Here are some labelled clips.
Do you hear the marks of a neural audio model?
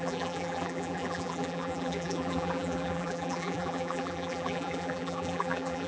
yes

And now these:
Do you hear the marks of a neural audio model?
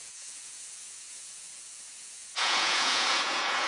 yes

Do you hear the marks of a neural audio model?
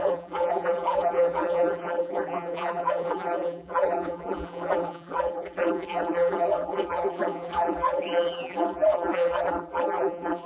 yes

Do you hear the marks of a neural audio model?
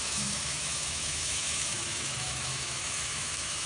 yes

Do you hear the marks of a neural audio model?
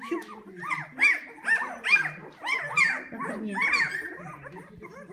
no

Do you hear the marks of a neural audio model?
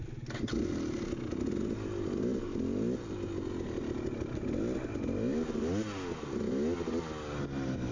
no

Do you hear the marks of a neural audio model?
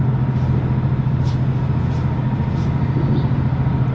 no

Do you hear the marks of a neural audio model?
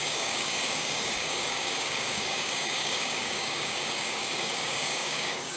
yes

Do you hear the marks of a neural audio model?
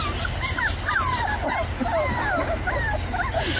no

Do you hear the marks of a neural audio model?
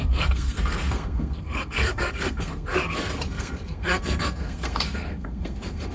yes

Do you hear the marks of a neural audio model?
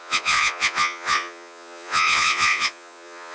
yes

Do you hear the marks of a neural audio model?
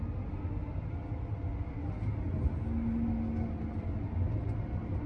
no